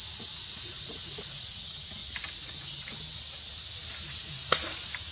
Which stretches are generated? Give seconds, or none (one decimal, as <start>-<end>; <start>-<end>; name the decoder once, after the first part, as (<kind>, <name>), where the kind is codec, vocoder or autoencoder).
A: 0.0-2.0 (vocoder, Vocos)